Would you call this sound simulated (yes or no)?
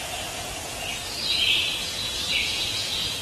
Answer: yes